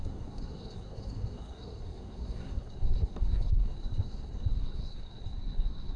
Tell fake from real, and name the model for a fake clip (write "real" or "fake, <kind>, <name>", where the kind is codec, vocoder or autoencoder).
fake, codec, SNAC